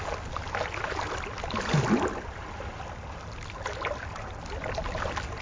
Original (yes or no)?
yes